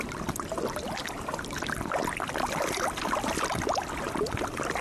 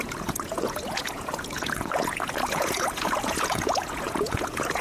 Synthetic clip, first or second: second